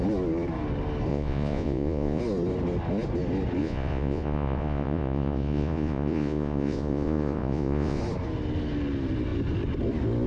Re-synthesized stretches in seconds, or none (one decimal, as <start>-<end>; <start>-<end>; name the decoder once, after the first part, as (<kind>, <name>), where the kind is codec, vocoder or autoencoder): 1.1-2.2 (vocoder, Vocos); 3.6-8.0